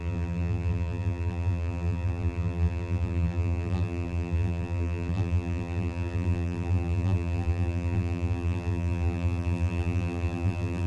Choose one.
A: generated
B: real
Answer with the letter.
A